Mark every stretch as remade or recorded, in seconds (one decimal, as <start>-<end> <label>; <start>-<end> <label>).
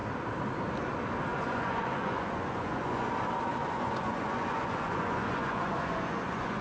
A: 0.0-1.3 recorded; 1.3-3.1 remade; 3.1-3.6 recorded; 3.6-6.6 remade